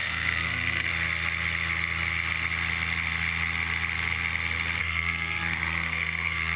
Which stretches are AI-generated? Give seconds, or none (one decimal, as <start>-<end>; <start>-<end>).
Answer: 0.0-0.9; 4.8-6.6